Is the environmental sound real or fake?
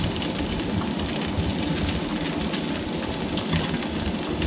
fake